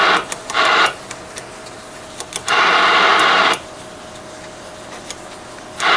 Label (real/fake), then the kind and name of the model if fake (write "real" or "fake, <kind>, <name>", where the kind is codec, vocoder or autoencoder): real